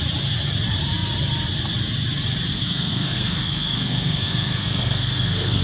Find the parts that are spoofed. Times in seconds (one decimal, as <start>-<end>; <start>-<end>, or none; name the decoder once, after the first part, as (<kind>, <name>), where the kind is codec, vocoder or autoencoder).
2.5-5.6 (codec, SNAC)